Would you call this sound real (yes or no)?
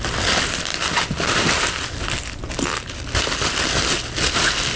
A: yes